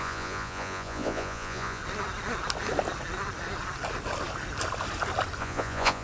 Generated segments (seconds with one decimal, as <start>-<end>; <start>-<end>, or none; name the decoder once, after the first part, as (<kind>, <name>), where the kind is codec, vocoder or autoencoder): 0.0-1.8 (vocoder, Vocos); 5.4-6.0